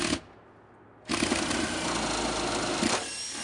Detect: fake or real real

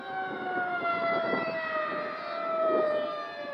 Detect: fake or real fake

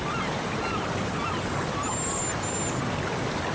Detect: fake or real real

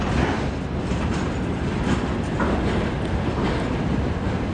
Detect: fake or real real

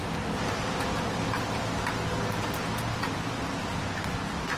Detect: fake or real real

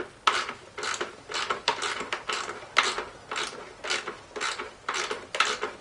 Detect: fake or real real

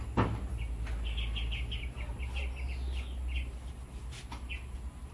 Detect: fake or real real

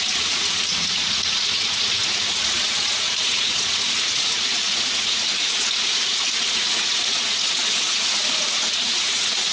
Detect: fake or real fake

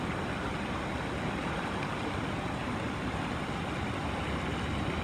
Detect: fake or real real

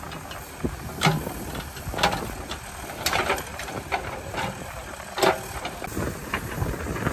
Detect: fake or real real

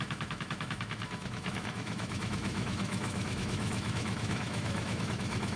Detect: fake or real fake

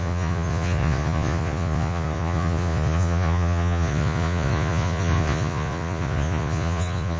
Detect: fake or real fake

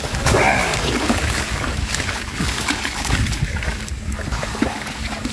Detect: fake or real fake